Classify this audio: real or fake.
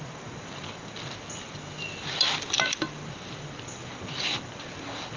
real